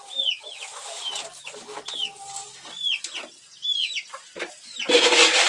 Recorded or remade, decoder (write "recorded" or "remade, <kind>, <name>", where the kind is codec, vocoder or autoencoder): recorded